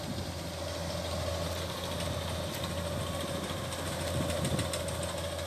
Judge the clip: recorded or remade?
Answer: recorded